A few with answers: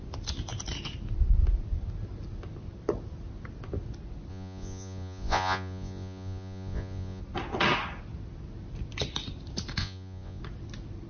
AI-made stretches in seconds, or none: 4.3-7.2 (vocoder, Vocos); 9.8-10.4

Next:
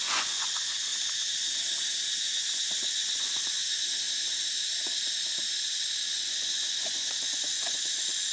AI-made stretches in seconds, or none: 0.0-0.9 (vocoder, Vocos); 2.6-3.6; 6.1-8.3